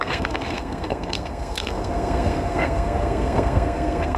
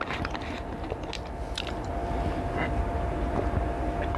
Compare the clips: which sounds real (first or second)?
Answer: second